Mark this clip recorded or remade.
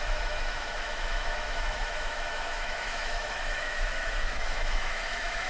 remade